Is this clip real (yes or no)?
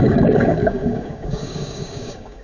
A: no